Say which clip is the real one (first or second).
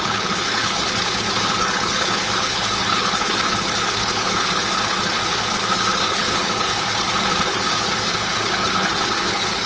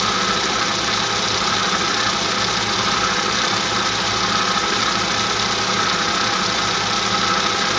second